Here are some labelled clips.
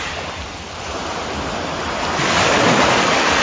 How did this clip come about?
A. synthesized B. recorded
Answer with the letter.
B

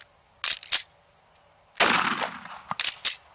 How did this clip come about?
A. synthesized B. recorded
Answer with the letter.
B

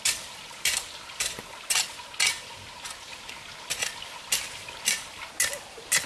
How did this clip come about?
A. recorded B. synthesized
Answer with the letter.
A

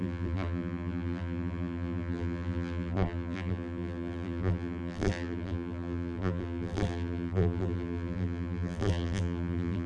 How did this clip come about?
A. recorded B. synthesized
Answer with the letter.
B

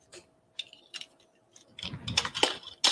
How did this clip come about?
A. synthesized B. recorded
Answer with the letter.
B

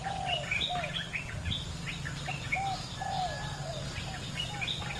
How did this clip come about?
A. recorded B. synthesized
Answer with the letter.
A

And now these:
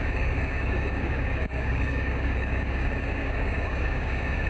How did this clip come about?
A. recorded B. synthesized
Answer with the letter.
B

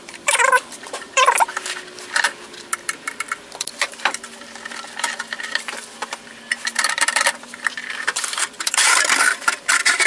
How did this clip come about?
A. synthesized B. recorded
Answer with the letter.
A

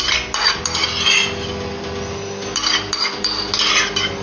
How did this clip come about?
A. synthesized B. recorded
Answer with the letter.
B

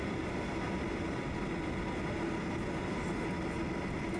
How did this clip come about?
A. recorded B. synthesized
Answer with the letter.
A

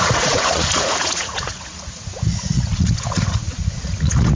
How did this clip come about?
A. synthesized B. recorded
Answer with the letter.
A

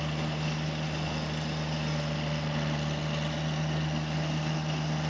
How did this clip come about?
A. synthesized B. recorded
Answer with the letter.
B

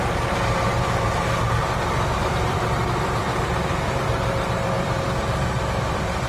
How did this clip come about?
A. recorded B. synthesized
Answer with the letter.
B